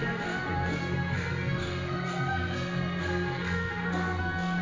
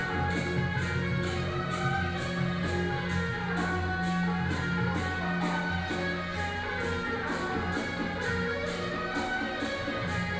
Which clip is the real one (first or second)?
second